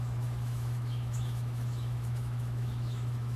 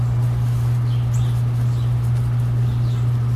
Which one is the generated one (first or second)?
first